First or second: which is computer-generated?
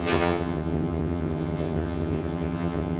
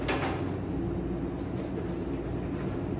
first